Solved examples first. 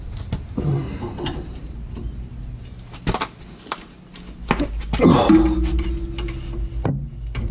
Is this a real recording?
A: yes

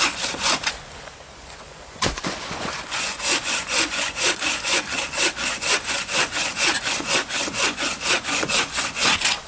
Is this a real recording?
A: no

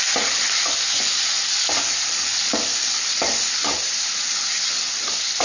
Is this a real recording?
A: yes